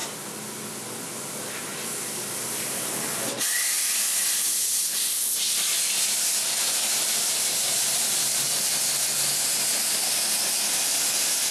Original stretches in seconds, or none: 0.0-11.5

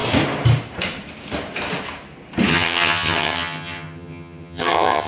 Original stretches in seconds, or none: 0.0-2.5

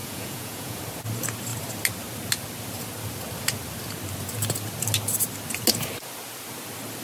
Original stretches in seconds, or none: 0.8-7.0

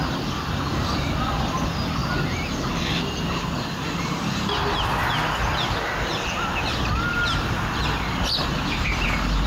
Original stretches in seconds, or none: 0.0-0.7; 1.3-9.5

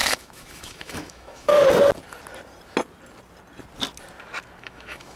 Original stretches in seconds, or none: 1.5-4.6

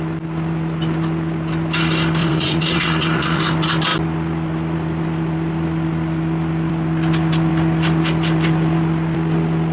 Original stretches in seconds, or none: 0.0-2.2; 3.4-9.7

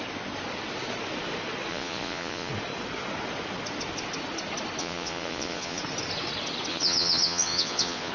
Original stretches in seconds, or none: 0.0-1.7; 2.5-4.8; 5.8-6.7